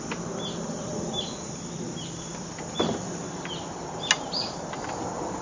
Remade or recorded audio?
recorded